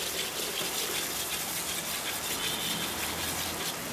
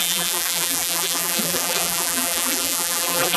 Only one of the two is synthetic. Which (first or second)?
second